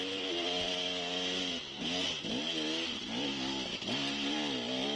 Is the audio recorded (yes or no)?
yes